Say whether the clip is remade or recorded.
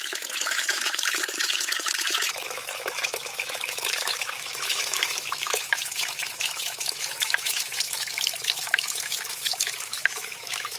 remade